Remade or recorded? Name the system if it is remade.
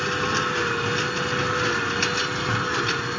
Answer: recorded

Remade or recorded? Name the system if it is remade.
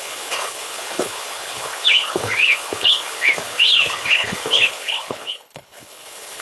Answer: remade, codec, HILCodec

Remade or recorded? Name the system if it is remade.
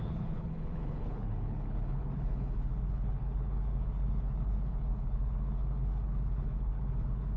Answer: remade, codec, HILCodec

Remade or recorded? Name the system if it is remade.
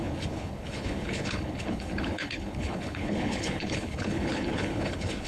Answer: remade, codec, HILCodec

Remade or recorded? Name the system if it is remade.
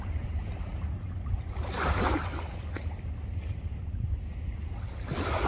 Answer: recorded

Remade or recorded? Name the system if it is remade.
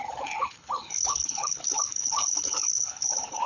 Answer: remade, codec, HILCodec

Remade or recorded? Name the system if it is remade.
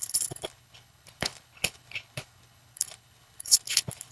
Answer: remade, codec, HILCodec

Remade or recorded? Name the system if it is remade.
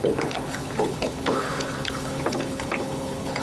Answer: remade, codec, HILCodec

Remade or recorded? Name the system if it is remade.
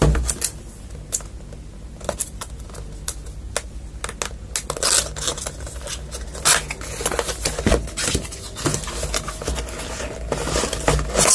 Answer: recorded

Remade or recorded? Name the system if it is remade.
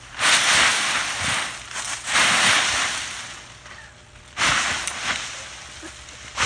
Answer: recorded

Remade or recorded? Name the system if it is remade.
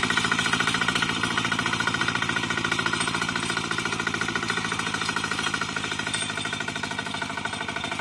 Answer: recorded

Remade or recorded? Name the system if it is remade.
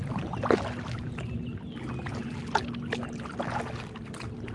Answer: recorded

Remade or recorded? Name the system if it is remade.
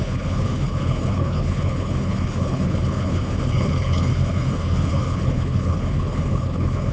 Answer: remade, codec, HILCodec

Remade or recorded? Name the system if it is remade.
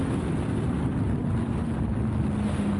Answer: recorded